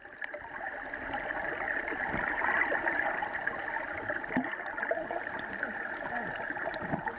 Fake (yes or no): no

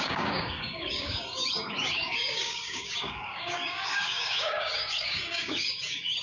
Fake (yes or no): yes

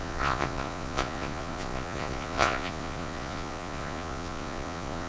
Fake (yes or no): yes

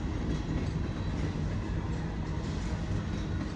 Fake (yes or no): no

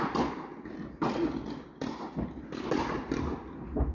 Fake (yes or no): no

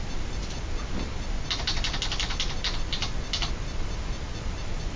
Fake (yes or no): no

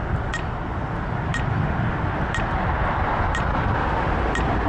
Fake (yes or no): no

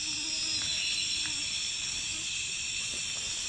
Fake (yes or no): no